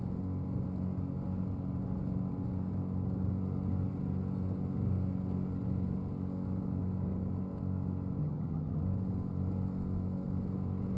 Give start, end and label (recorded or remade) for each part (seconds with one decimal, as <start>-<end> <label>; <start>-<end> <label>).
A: 0.0-8.2 recorded; 8.2-8.8 remade; 8.8-11.0 recorded